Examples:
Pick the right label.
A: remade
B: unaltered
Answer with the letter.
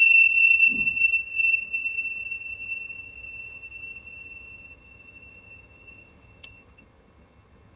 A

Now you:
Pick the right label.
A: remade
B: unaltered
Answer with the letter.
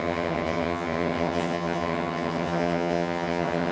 A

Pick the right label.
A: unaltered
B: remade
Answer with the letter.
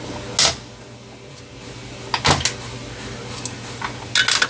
A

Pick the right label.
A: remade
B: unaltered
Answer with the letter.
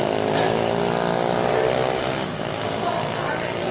B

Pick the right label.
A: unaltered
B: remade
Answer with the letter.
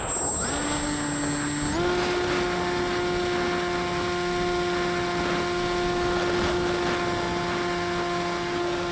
A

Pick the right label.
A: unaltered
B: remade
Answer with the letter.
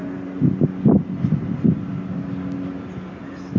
A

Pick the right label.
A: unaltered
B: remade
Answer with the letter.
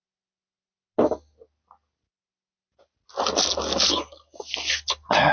A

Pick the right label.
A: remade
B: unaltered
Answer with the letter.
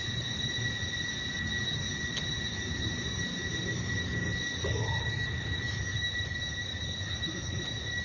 B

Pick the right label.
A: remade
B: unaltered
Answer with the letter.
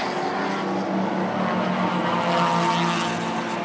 B